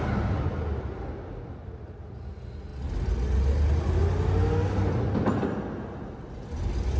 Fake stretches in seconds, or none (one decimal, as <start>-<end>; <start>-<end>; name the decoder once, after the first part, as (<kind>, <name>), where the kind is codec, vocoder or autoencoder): none